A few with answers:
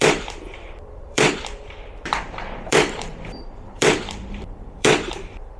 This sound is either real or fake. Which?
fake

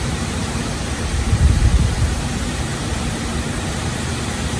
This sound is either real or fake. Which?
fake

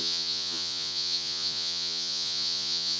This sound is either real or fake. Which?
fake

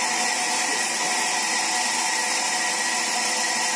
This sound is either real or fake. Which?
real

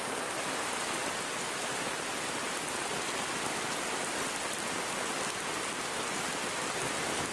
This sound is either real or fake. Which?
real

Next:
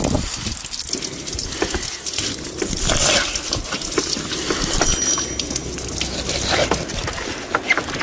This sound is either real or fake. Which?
real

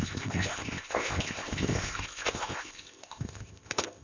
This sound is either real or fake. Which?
fake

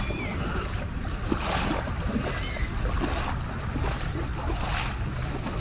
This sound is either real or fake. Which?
real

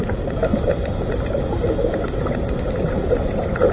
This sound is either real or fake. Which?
real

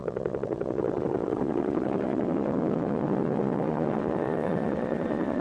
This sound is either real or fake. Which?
fake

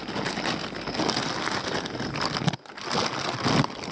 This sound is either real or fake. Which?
real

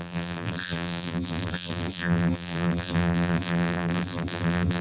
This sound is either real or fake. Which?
fake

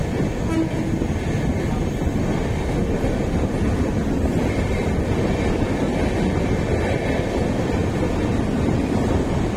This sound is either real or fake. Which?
real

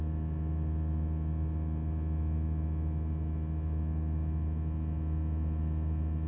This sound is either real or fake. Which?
real